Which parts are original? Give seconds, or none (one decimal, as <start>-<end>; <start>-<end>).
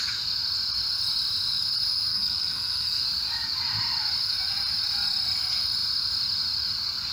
0.0-2.1; 3.0-7.1